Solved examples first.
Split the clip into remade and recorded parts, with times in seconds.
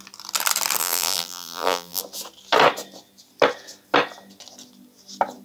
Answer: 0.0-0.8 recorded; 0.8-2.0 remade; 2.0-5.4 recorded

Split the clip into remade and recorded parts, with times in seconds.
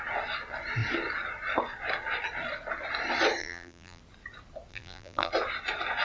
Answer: 0.0-3.4 recorded; 3.4-4.0 remade; 4.0-4.7 recorded; 4.7-5.3 remade; 5.3-6.0 recorded